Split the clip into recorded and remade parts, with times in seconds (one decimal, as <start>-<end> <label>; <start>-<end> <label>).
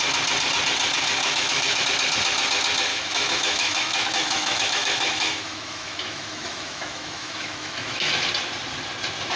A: 0.0-1.2 recorded; 1.2-1.8 remade; 1.8-2.9 recorded; 2.9-8.1 remade; 8.1-9.4 recorded